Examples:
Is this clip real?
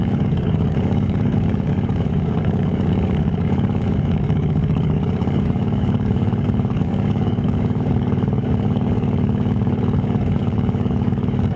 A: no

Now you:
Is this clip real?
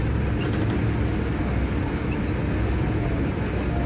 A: yes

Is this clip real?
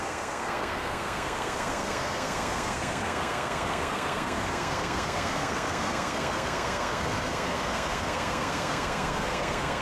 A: no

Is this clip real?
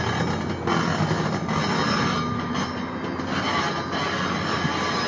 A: yes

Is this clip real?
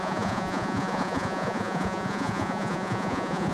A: no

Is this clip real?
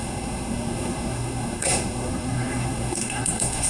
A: no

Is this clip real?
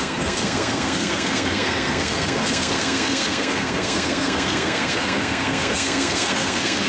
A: no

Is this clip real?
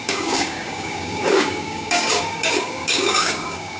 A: no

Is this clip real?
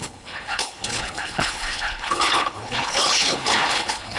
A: no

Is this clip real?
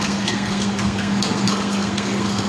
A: no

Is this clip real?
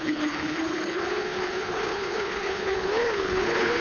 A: no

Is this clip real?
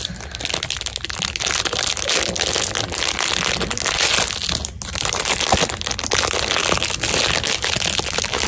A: yes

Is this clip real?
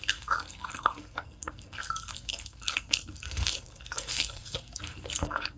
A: no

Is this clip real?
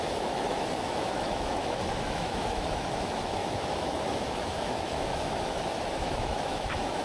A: no